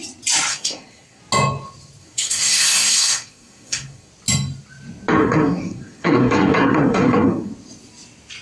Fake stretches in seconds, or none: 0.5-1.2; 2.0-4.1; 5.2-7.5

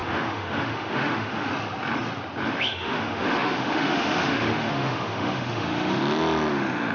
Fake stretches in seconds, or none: 0.0-1.5; 2.5-6.0; 6.5-6.9

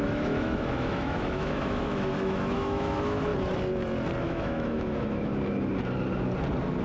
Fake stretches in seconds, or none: 0.0-3.3; 4.2-5.3

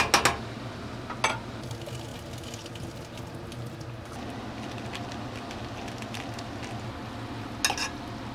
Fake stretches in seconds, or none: none

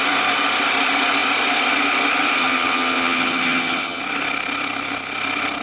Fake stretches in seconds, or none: 2.4-4.0